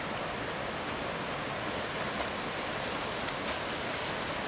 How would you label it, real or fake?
real